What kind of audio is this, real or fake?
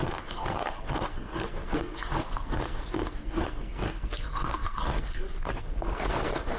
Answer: fake